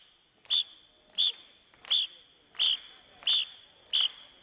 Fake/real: real